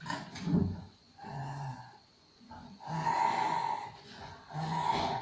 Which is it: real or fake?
fake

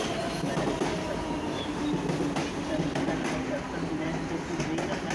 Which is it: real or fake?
real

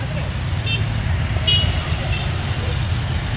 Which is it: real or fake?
real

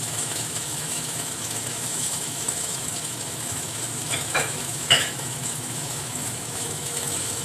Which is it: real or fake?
fake